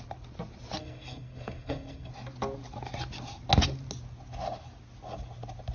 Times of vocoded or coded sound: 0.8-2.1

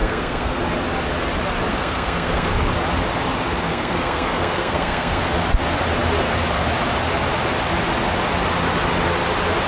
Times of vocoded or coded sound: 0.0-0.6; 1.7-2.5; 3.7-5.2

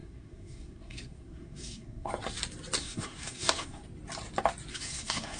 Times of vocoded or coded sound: 0.0-2.1; 2.8-3.8; 4.7-5.4